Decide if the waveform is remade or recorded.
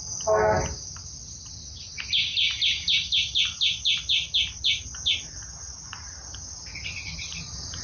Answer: recorded